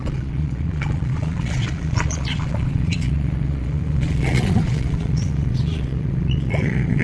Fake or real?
fake